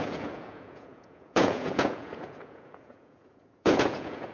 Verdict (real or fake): fake